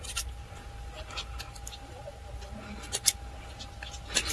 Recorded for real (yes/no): yes